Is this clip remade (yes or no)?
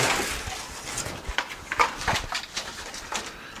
no